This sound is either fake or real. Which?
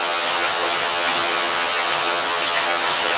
fake